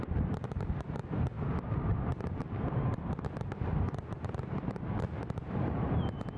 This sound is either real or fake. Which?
fake